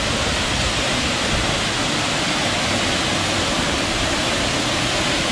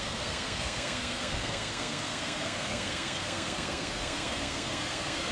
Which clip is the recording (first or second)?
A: first